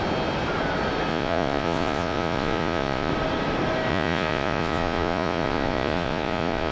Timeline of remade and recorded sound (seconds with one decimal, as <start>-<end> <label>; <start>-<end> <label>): 0.0-1.1 recorded; 1.1-3.1 remade; 3.1-3.9 recorded; 3.9-6.7 remade